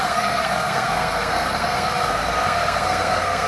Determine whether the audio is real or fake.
fake